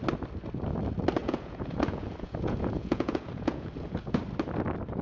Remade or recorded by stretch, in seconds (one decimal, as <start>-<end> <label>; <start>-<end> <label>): 0.0-1.2 recorded; 1.2-4.2 remade; 4.2-5.0 recorded